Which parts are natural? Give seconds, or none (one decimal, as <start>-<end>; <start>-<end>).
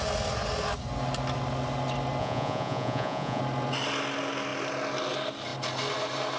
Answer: 0.0-2.2; 3.4-6.4